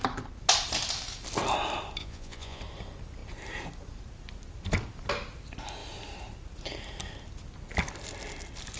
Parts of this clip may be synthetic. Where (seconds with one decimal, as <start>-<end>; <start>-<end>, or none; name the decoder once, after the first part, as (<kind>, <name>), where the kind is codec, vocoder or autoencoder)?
2.0-2.6 (vocoder, Vocos)